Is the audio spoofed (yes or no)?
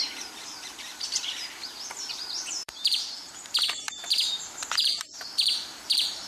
yes